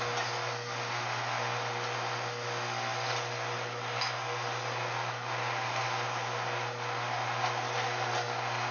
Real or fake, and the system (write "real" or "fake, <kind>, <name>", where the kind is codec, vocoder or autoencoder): real